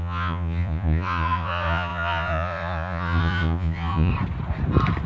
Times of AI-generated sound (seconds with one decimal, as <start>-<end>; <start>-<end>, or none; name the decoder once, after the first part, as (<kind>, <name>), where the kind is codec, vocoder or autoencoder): 0.0-4.1 (vocoder, Vocos)